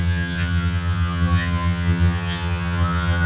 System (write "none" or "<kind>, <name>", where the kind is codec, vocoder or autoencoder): vocoder, HiFi-GAN